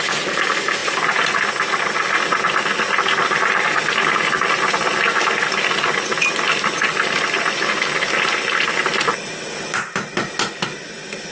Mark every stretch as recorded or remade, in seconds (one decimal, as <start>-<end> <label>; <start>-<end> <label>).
0.0-11.3 recorded